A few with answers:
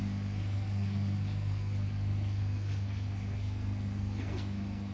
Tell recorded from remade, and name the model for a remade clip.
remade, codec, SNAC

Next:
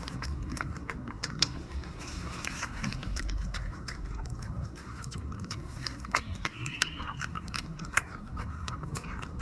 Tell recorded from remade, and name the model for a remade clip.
remade, codec, SNAC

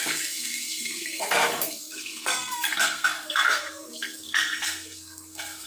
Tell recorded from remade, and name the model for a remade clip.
remade, codec, SNAC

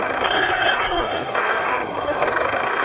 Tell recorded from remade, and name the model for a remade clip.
remade, codec, SNAC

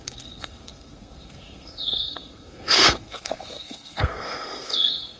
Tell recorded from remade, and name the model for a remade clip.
remade, codec, SNAC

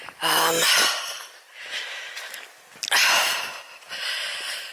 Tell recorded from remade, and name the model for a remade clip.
recorded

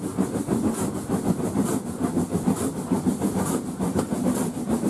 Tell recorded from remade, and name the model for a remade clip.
recorded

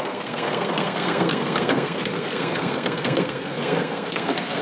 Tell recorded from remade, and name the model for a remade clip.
remade, codec, SNAC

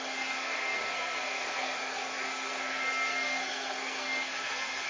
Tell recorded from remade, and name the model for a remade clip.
remade, codec, SNAC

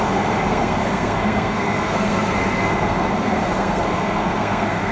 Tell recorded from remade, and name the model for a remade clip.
remade, codec, SNAC